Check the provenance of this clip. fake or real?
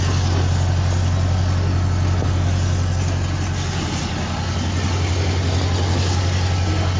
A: real